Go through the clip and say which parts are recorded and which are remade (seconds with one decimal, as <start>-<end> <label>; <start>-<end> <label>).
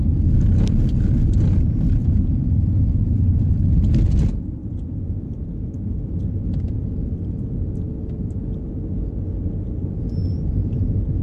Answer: 0.0-2.0 recorded; 2.0-3.4 remade; 3.4-4.6 recorded; 4.6-6.8 remade; 6.8-10.2 recorded; 10.2-11.2 remade